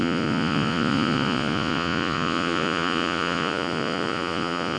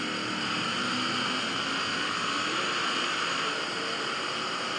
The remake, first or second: first